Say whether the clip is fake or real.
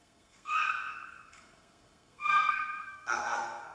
fake